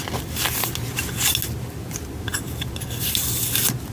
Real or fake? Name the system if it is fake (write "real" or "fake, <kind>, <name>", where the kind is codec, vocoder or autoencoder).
real